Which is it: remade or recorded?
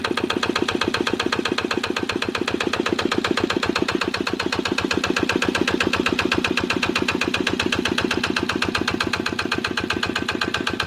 recorded